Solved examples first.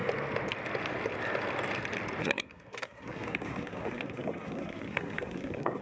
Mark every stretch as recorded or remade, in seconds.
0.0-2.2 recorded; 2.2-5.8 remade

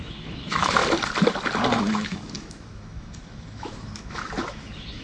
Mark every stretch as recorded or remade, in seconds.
0.0-0.8 remade; 0.8-1.8 recorded; 1.8-5.0 remade

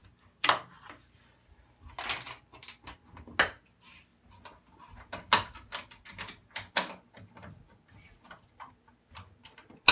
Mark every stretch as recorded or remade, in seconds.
0.0-9.9 recorded

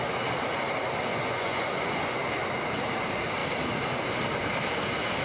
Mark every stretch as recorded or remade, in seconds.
0.0-1.1 recorded; 1.1-2.2 remade; 2.2-5.2 recorded